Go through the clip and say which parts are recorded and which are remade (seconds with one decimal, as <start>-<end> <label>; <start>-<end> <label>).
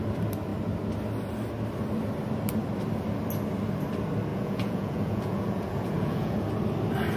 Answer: 0.0-4.3 recorded; 4.3-6.5 remade; 6.5-7.2 recorded